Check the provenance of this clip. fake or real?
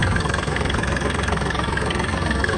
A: fake